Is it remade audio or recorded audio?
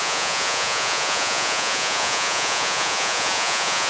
remade